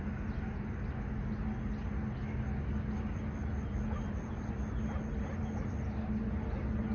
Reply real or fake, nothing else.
real